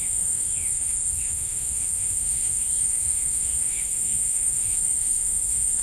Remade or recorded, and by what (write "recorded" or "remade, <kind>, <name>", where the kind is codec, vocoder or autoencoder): remade, autoencoder, DAC-VAE